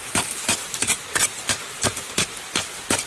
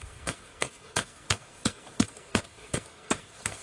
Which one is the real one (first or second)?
first